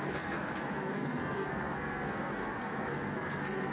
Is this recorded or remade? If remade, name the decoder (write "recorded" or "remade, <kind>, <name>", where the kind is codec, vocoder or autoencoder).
remade, codec, SNAC